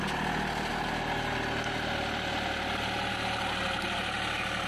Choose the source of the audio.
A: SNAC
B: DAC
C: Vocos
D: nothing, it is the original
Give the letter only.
D